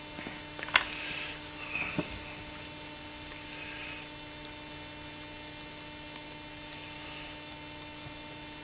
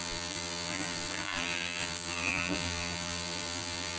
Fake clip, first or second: second